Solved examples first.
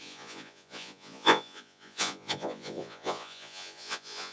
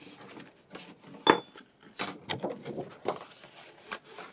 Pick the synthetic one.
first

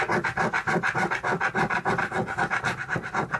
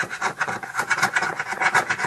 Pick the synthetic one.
second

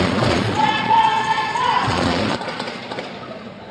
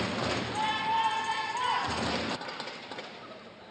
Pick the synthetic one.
first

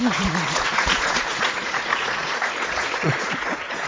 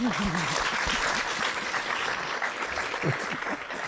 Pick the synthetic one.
first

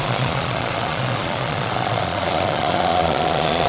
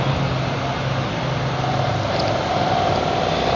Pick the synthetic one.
first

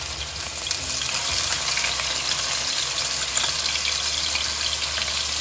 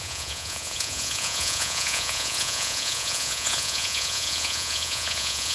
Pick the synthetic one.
second